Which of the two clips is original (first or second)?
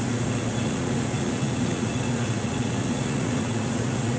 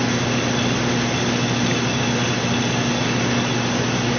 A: second